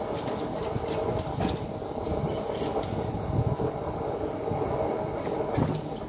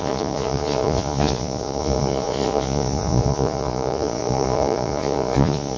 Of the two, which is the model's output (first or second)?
second